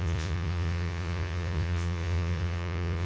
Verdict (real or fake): fake